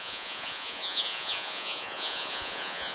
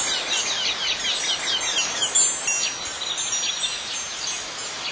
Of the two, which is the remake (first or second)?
first